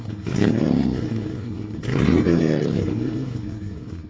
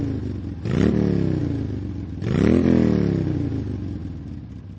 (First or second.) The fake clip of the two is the first